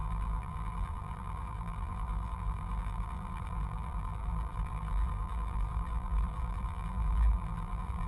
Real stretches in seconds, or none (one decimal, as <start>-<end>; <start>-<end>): none